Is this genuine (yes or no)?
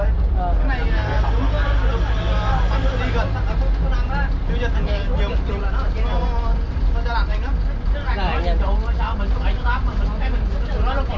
yes